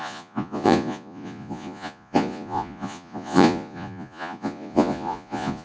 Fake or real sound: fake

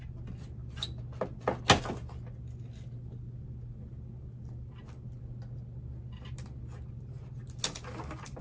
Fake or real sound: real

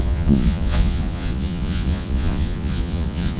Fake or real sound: fake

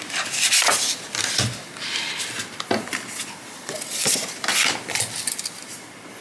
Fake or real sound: real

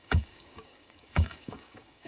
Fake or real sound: fake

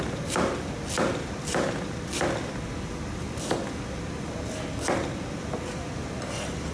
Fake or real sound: real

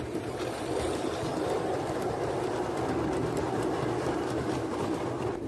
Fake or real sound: real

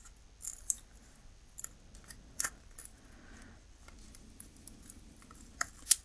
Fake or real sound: real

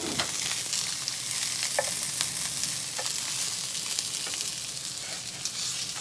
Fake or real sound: real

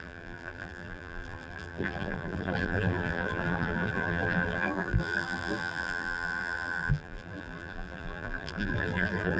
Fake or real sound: fake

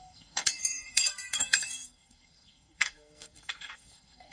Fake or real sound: fake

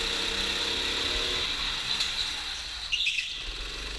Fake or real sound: real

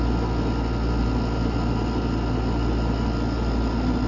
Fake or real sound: real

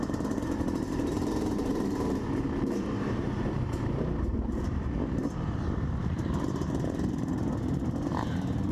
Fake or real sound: fake